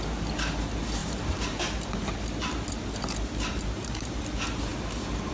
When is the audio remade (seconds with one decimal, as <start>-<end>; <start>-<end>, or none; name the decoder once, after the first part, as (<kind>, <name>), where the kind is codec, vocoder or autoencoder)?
1.0-4.2 (vocoder, BigVGAN v2)